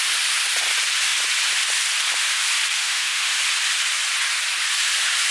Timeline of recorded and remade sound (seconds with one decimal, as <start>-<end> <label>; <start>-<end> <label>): 0.0-2.8 recorded; 2.8-3.4 remade; 3.4-5.3 recorded